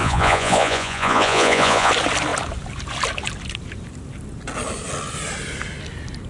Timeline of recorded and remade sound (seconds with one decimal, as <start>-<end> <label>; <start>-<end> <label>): 0.0-1.9 remade; 1.9-6.3 recorded